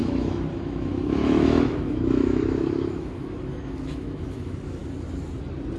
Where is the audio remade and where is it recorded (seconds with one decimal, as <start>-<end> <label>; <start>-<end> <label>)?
0.0-4.8 remade; 4.8-5.8 recorded

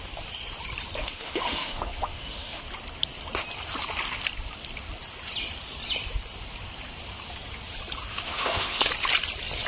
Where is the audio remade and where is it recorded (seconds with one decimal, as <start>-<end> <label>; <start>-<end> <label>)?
0.0-1.0 recorded; 1.0-2.6 remade; 2.6-8.1 recorded; 8.1-8.8 remade; 8.8-9.7 recorded

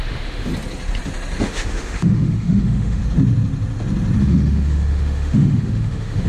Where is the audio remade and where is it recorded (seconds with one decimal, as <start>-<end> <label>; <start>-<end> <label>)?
0.0-0.5 remade; 0.5-1.4 recorded; 1.4-3.0 remade; 3.0-4.2 recorded; 4.2-6.3 remade

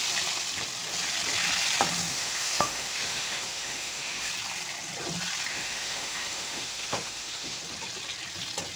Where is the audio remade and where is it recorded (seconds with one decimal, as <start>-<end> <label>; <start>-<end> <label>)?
0.0-2.1 recorded; 2.1-4.3 remade; 4.3-5.5 recorded; 5.5-7.6 remade; 7.6-8.8 recorded

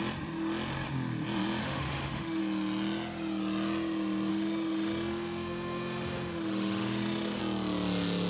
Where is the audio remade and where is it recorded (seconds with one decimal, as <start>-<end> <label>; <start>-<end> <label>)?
0.0-1.6 recorded; 1.6-2.4 remade; 2.4-4.3 recorded; 4.3-7.4 remade; 7.4-8.3 recorded